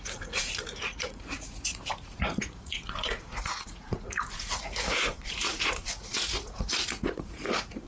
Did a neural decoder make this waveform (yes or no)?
yes